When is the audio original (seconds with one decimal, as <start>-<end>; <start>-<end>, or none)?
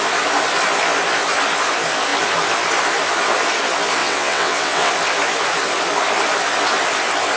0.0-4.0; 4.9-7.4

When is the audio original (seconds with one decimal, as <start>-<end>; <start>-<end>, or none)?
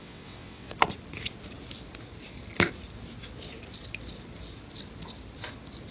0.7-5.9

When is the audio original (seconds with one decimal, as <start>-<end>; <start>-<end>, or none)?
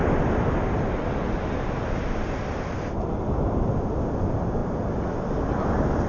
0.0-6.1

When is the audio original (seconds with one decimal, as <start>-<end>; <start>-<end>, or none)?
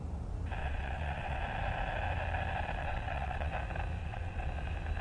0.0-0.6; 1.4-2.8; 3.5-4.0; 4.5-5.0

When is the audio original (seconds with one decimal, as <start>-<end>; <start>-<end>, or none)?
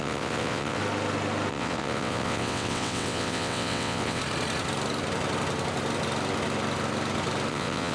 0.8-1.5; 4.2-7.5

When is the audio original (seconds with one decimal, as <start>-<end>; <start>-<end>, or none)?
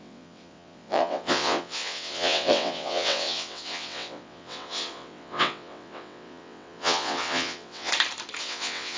7.9-8.4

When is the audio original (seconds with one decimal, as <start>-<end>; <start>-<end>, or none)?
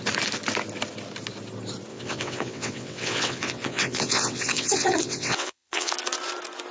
0.0-1.9; 5.9-6.7